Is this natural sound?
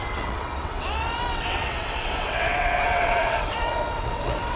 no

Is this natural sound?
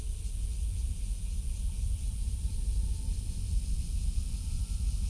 yes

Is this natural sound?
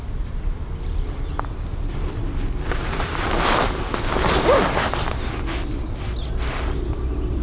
yes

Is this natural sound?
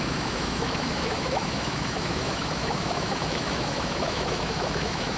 no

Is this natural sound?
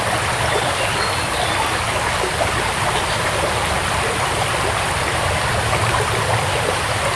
yes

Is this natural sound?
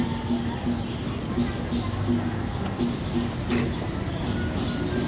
yes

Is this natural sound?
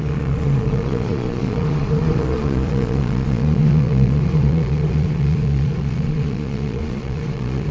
no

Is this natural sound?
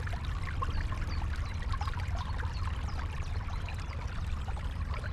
yes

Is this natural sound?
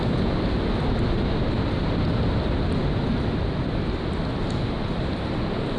yes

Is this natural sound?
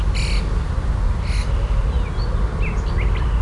yes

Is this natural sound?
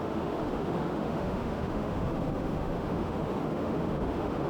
no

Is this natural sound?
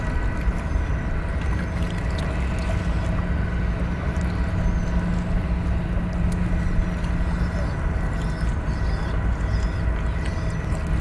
yes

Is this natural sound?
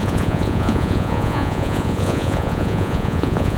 no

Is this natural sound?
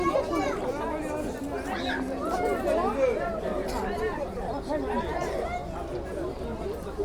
yes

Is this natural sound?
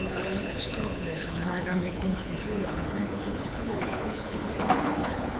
no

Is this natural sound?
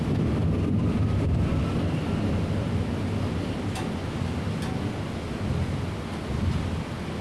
yes